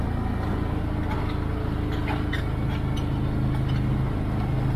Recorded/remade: recorded